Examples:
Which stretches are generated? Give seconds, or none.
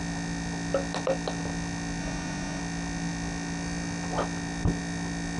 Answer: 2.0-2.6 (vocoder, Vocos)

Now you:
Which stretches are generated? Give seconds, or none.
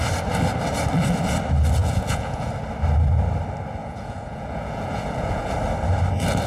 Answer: 1.8-2.5 (vocoder, Vocos); 3.8-5.5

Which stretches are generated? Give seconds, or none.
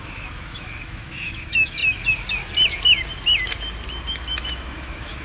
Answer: 0.0-1.8 (autoencoder, DAC-VAE); 4.1-5.2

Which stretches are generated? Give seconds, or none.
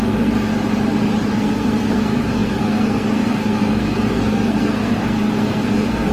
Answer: 0.0-0.5 (codec, SNAC); 1.3-6.1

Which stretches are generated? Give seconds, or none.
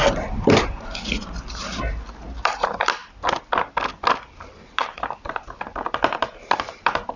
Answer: none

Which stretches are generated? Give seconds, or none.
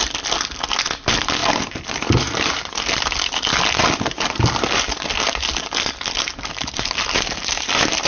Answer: none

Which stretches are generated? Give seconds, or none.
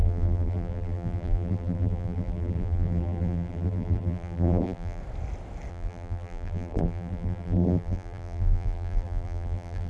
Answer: 0.0-5.0 (vocoder, BigVGAN v2); 5.7-9.9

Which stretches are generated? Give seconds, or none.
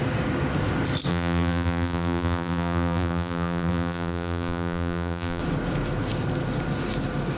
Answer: 1.1-5.4 (vocoder, BigVGAN v2)